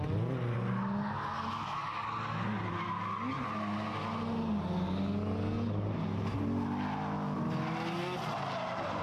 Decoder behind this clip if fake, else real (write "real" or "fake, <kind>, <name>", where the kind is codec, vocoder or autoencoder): real